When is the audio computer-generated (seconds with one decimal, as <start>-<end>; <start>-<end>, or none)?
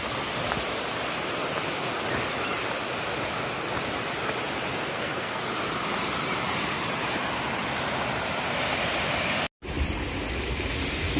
4.9-5.4